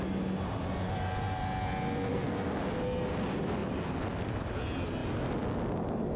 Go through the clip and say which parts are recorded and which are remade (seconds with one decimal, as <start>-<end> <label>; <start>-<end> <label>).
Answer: 0.0-2.1 recorded; 2.1-2.6 remade; 2.6-6.2 recorded